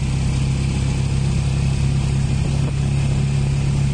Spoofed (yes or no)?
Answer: no